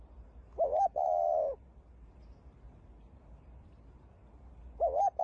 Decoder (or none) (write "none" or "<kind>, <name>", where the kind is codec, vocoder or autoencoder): none